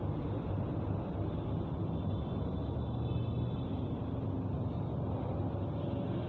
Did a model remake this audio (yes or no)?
no